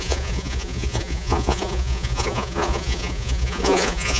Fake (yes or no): yes